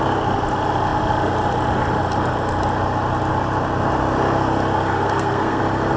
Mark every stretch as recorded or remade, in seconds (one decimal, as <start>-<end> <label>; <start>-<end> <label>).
0.0-5.0 recorded; 5.0-5.6 remade; 5.6-6.0 recorded